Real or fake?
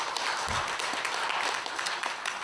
real